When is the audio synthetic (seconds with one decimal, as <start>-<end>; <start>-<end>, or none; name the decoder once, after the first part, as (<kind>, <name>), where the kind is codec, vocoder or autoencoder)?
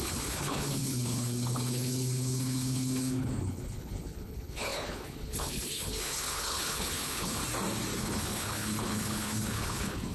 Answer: 0.0-7.4 (codec, HILCodec); 8.0-10.1